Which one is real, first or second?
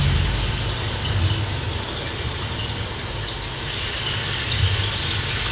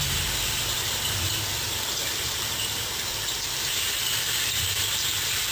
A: first